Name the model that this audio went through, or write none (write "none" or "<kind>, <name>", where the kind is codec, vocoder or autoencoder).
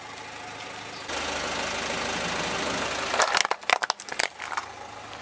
none